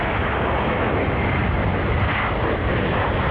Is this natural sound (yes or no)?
yes